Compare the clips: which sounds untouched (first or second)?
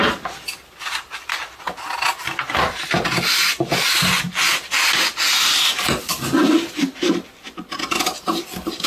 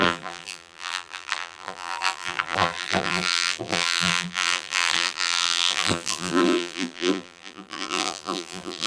first